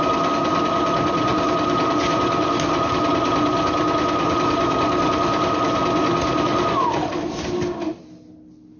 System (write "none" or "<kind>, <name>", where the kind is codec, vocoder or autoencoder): none